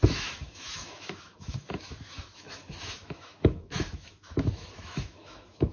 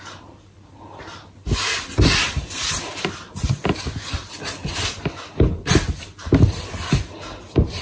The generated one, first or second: first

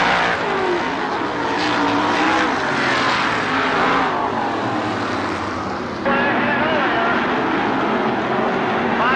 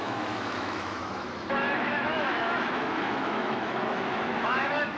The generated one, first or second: second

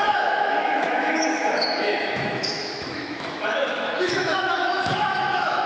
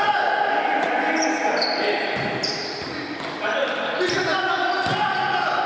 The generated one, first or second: first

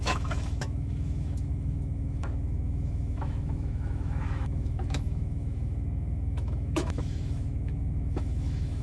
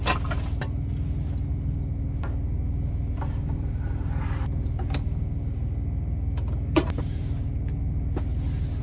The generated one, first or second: first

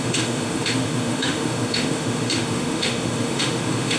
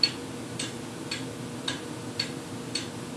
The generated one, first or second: first